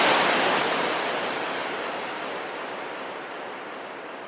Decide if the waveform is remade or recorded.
remade